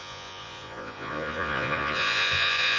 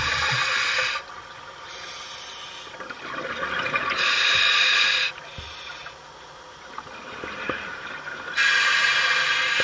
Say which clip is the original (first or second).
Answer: second